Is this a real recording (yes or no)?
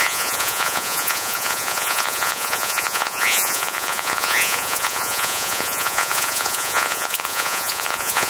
no